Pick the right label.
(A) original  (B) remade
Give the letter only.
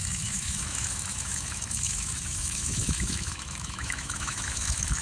B